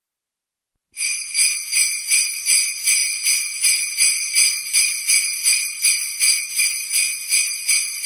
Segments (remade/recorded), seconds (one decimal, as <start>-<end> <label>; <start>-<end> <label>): 0.0-8.1 recorded